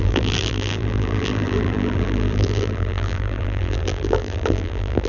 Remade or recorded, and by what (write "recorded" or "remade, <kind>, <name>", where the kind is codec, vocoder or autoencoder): remade, vocoder, BigVGAN v2